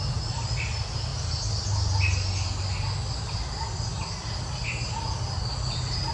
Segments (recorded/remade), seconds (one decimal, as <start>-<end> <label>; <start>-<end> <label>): 0.0-6.1 recorded